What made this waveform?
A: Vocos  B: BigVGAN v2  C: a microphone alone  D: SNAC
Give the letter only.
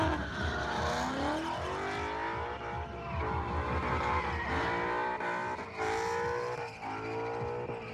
C